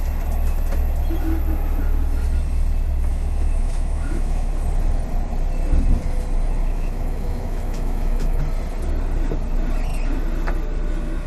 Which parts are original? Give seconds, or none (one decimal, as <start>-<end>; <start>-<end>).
0.0-3.1; 4.5-6.6; 8.4-11.3